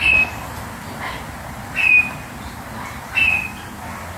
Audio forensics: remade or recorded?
recorded